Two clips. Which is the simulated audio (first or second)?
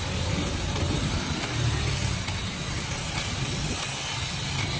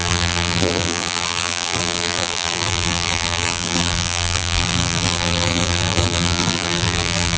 second